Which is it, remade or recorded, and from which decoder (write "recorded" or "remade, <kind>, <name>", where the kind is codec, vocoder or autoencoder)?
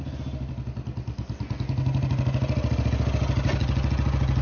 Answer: recorded